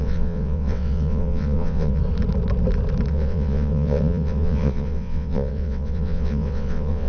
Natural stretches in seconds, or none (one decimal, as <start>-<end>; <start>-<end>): 2.0-3.1